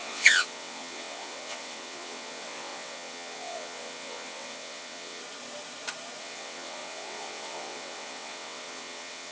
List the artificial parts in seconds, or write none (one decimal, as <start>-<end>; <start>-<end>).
0.0-5.2; 6.2-9.3